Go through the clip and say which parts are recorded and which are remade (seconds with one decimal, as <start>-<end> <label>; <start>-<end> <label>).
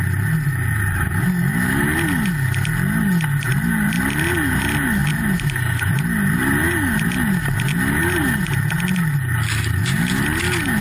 0.0-10.8 recorded